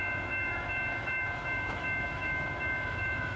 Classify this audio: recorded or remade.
remade